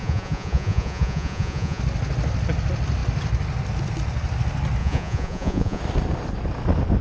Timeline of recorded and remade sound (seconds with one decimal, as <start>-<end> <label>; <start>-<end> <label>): 0.0-1.8 remade; 1.8-4.8 recorded; 4.8-5.8 remade; 5.8-7.0 recorded